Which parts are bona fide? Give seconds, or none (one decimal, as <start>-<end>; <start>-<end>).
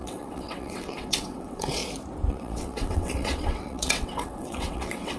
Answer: 1.8-2.3